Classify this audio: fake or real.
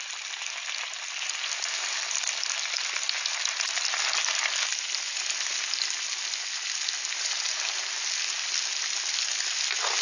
real